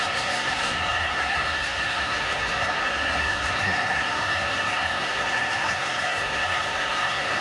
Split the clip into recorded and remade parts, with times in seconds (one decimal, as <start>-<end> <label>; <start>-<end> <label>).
0.0-7.4 remade